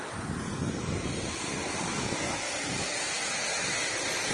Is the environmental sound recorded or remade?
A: recorded